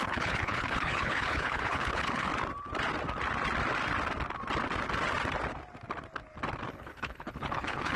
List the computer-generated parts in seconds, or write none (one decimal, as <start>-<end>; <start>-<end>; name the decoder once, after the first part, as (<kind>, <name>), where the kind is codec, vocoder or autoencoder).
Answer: 0.0-2.3 (codec, HILCodec); 6.7-8.0